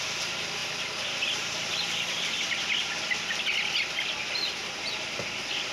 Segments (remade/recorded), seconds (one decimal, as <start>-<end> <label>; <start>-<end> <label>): 0.0-0.6 recorded; 0.6-2.2 remade; 2.2-5.7 recorded